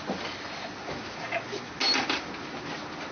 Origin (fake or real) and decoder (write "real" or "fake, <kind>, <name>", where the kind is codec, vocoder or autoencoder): real